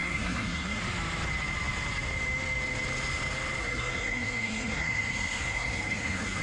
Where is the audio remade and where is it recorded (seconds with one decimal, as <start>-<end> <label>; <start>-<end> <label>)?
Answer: 0.0-0.8 remade; 0.8-3.6 recorded; 3.6-6.4 remade